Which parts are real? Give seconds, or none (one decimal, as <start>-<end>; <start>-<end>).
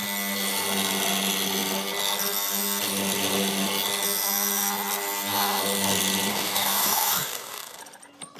0.0-6.3; 7.8-8.4